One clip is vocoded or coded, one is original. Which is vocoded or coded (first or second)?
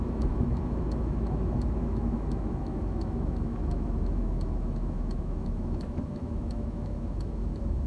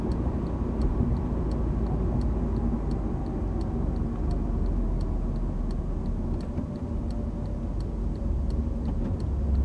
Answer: first